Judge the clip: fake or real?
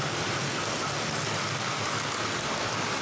real